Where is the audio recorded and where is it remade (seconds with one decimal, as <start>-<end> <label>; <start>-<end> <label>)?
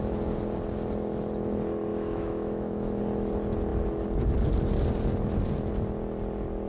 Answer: 0.0-1.9 recorded; 1.9-3.0 remade; 3.0-6.7 recorded